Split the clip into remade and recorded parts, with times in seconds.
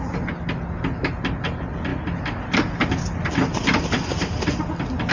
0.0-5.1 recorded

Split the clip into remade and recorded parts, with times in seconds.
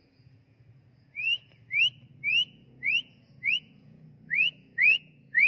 0.0-1.8 remade; 1.8-2.3 recorded; 2.3-5.5 remade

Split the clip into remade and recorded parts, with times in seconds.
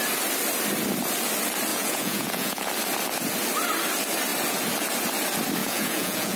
0.0-1.7 recorded; 1.7-2.7 remade; 2.7-5.6 recorded; 5.6-6.4 remade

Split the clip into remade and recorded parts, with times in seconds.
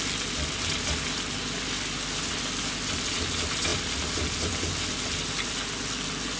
0.0-6.4 recorded